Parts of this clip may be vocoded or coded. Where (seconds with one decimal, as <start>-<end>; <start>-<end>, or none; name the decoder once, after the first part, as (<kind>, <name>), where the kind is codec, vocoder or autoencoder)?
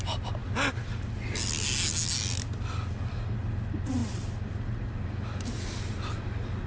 none